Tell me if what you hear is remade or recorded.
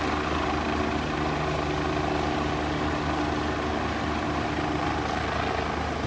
recorded